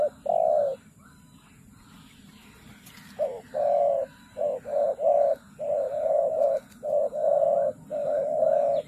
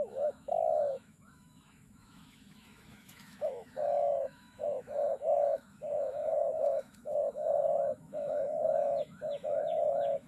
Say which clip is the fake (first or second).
second